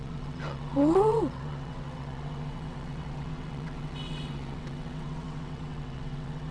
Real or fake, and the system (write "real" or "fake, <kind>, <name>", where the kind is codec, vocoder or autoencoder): fake, vocoder, WaveNeXt